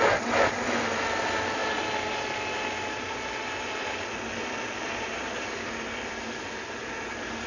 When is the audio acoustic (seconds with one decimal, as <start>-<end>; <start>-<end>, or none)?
0.0-7.5